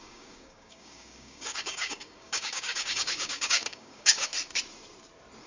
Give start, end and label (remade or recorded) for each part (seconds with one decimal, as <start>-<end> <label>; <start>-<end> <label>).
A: 0.0-4.3 remade; 4.3-5.5 recorded